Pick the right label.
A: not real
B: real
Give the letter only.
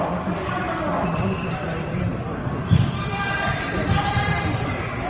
B